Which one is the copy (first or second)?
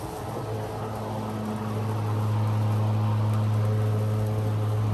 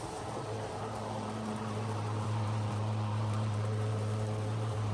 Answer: second